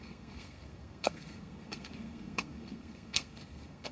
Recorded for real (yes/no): no